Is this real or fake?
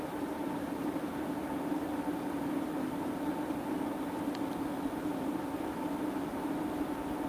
real